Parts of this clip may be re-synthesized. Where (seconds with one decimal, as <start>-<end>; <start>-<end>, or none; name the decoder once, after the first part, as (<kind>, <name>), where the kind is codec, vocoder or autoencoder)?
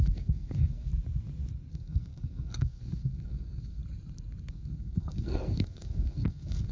0.0-0.9 (codec, SNAC); 1.7-3.8; 4.5-6.7